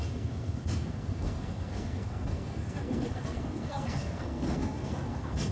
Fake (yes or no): yes